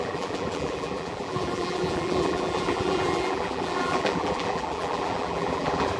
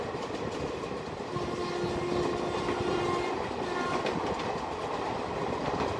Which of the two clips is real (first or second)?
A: second